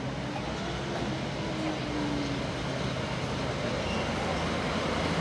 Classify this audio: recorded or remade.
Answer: recorded